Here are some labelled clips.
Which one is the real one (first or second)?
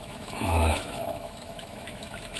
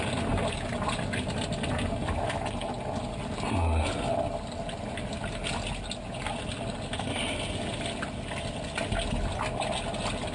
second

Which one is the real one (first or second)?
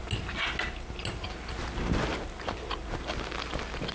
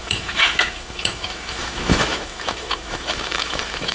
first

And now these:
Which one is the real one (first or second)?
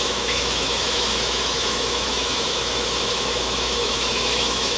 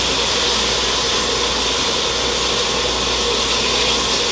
second